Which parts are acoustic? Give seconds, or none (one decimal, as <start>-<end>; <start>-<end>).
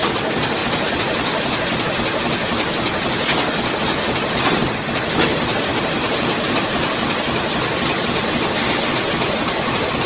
0.0-0.6; 3.8-5.7; 9.1-10.1